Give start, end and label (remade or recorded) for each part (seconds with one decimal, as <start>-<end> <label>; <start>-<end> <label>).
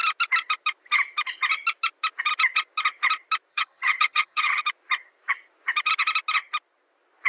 0.0-3.5 recorded; 3.5-4.6 remade; 4.6-7.3 recorded